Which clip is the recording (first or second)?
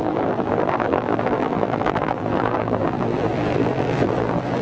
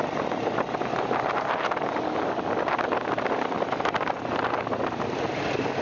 second